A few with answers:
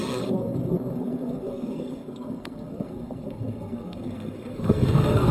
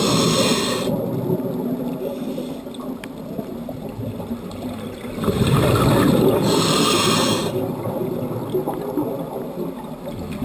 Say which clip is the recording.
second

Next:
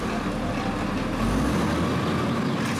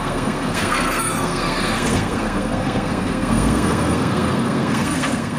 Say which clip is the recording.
first